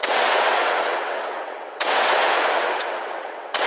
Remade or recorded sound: remade